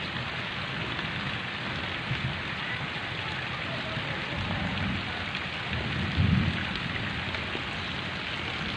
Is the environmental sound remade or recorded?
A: recorded